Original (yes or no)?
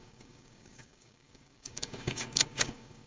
no